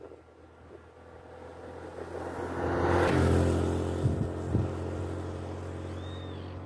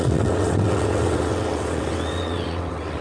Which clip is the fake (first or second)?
second